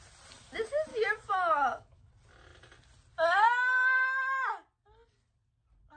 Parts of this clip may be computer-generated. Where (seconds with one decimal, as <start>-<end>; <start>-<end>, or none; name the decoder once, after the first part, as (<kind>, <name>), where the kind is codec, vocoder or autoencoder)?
0.9-2.1 (autoencoder, DAC-VAE)